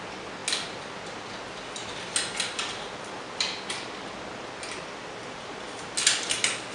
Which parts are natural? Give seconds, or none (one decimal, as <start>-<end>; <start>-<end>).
0.0-6.7